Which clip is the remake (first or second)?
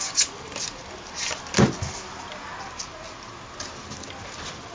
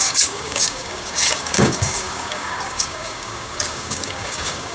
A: second